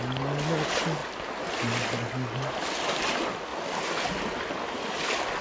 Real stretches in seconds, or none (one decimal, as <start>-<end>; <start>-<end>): 0.0-5.4